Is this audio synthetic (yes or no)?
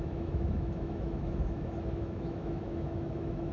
yes